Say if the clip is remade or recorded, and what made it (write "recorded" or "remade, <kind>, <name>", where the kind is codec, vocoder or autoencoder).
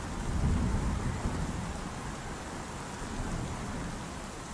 recorded